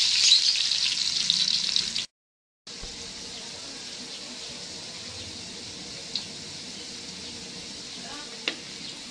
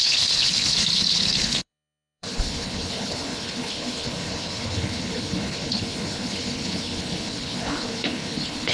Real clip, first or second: first